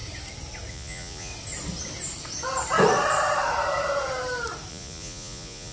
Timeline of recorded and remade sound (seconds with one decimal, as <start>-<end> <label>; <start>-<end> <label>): 0.0-0.7 recorded; 0.7-1.3 remade; 1.3-4.7 recorded; 4.7-5.7 remade